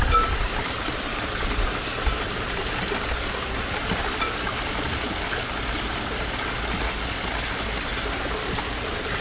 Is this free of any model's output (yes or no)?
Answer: yes